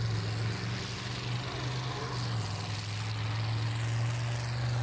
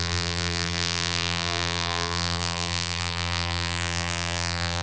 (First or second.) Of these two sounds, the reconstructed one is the second